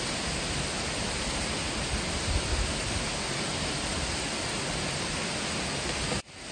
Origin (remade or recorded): recorded